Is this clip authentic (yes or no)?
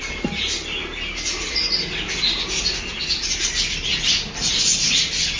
yes